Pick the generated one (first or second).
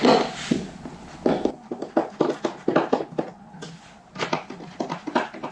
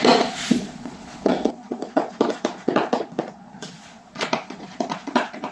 second